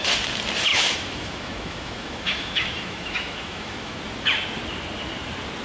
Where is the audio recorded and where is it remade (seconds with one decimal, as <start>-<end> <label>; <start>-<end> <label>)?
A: 0.0-0.7 recorded; 0.7-4.0 remade; 4.0-5.6 recorded